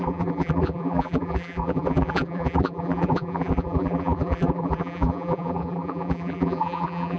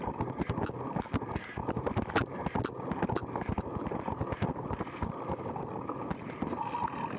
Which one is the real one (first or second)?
second